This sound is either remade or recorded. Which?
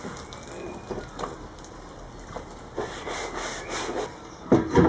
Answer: recorded